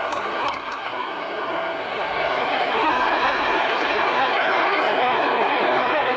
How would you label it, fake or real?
fake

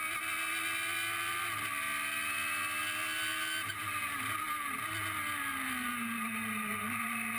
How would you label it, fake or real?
real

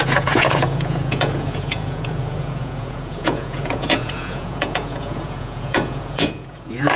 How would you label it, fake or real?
fake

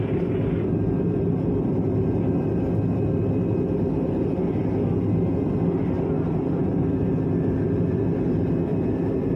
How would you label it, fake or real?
real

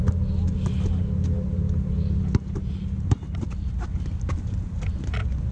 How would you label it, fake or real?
real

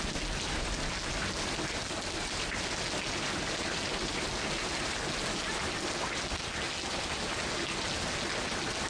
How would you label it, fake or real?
real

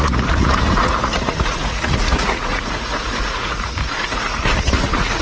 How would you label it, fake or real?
fake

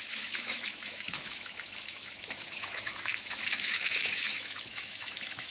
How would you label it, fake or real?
fake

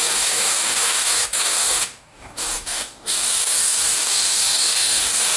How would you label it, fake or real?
fake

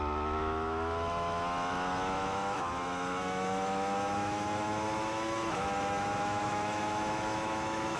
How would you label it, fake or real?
fake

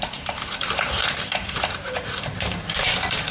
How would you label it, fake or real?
fake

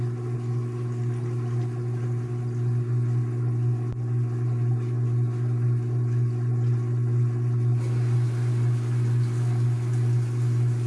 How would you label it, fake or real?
real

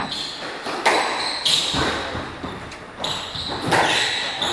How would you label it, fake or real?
real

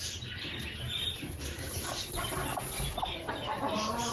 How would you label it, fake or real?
real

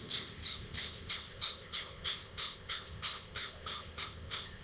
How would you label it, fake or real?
fake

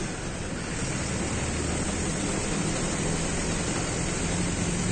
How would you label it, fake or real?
real